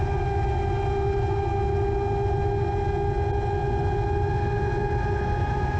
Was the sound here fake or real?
real